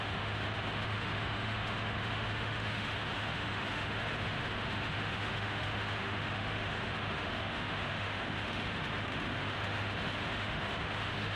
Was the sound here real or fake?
fake